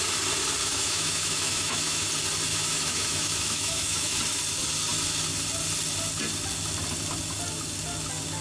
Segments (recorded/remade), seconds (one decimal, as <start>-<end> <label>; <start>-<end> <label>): 0.0-0.6 recorded; 0.6-2.1 remade; 2.1-2.5 recorded; 2.5-4.2 remade; 4.2-8.4 recorded